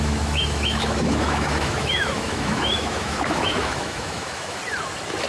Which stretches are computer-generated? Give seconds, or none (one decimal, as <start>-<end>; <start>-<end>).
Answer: 0.0-4.6

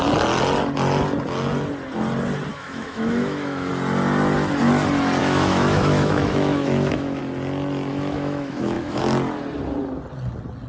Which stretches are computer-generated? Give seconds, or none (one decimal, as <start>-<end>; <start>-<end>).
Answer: 2.5-3.7; 5.2-7.2; 7.9-9.0

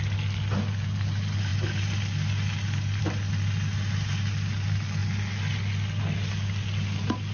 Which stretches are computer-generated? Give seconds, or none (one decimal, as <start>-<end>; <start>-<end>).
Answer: none

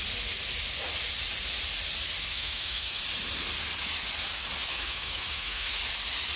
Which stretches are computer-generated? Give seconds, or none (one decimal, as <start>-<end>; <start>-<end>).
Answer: 2.3-3.0; 4.6-5.8

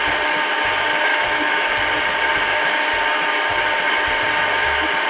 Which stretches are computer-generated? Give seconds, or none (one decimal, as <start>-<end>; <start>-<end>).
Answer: 1.1-1.7

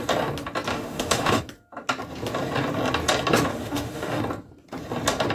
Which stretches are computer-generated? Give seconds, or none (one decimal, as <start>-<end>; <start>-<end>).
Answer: 0.7-1.4; 3.5-4.2

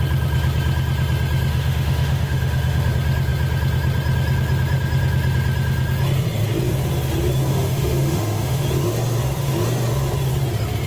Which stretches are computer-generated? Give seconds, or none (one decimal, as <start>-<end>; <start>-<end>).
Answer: 1.5-2.9; 7.5-8.6